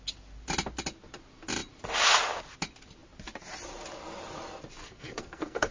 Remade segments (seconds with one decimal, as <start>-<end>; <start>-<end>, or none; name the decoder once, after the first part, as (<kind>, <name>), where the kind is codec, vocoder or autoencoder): 4.8-5.7 (codec, SNAC)